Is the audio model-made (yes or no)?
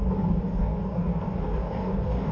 yes